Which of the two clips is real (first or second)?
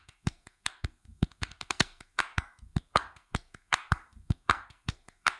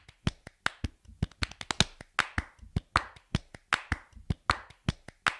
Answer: second